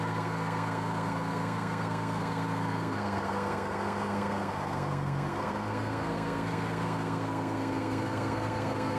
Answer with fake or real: fake